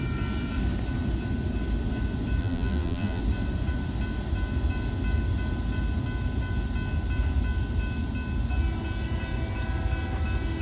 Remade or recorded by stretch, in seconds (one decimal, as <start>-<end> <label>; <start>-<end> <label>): 0.0-2.4 recorded; 2.4-3.2 remade; 3.2-10.6 recorded